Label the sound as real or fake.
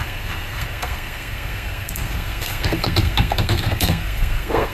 fake